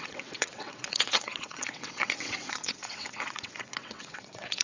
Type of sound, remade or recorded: remade